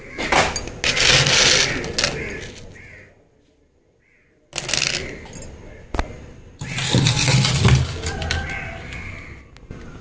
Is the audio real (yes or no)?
yes